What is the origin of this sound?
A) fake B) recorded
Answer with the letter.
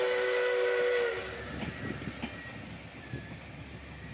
B